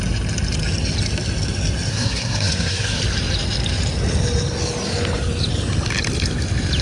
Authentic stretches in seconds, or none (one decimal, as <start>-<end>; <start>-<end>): 0.0-1.9; 3.0-6.8